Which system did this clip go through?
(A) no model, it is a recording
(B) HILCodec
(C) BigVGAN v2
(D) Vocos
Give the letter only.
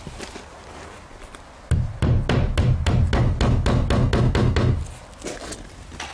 A